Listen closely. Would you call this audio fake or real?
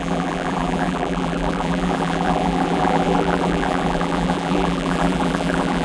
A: fake